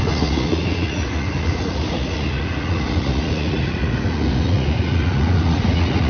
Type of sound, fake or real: fake